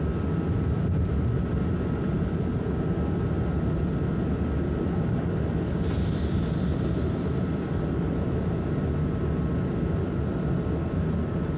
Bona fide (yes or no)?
yes